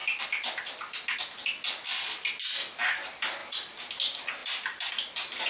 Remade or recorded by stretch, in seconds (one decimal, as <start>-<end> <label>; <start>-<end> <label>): 0.0-0.6 remade; 0.6-3.4 recorded; 3.4-3.9 remade; 3.9-4.4 recorded; 4.4-4.9 remade; 4.9-5.5 recorded